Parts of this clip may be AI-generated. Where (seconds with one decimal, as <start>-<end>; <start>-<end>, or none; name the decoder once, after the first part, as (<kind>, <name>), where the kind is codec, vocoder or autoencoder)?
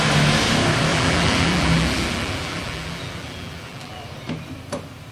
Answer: 0.9-4.0 (vocoder, BigVGAN v2)